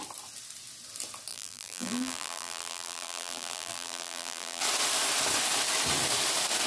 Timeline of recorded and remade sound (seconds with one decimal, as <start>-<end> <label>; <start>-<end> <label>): 0.0-1.3 recorded; 1.3-4.6 remade; 4.6-6.7 recorded